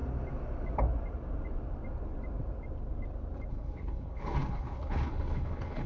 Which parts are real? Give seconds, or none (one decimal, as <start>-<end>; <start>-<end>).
0.0-3.5